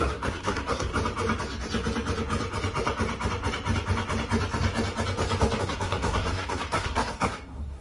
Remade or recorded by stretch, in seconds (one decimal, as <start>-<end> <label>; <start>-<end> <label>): 0.0-0.9 remade; 0.9-5.6 recorded; 5.6-7.8 remade